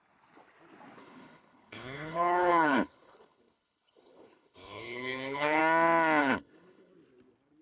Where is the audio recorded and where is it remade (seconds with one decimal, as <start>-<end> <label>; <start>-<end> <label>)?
0.0-1.0 recorded; 1.0-5.6 remade; 5.6-6.2 recorded; 6.2-6.9 remade; 6.9-7.6 recorded